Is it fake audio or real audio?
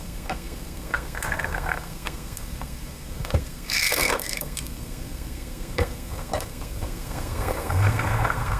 fake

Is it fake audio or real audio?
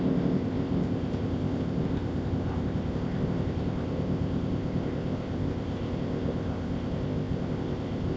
fake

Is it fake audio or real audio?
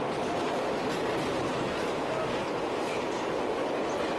real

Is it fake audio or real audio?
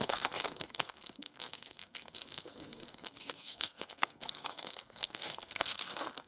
fake